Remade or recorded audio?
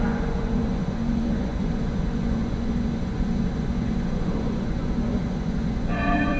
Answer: remade